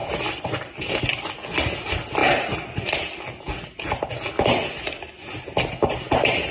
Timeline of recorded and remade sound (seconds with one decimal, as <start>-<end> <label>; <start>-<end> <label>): 0.0-6.5 recorded